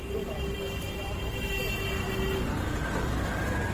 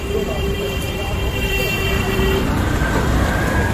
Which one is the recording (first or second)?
first